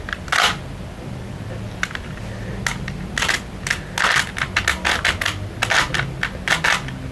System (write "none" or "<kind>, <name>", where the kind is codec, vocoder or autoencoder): none